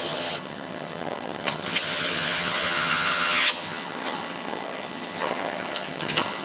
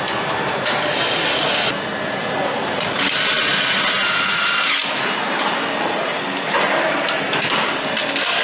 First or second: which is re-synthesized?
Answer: first